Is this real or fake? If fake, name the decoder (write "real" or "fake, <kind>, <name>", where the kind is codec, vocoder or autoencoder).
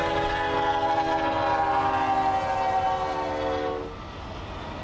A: real